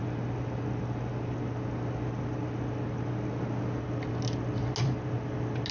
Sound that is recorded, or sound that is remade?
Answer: recorded